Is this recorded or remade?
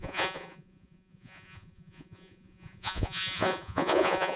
remade